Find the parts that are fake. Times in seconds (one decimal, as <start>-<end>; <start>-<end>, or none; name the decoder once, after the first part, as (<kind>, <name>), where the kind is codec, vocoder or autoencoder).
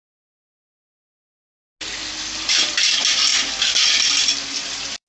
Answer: none